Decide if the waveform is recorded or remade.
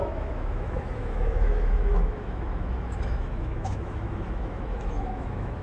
remade